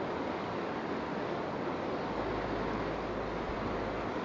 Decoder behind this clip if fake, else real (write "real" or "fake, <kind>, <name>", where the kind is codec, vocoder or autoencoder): real